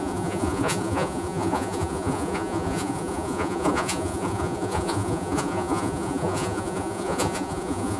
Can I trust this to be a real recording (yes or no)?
no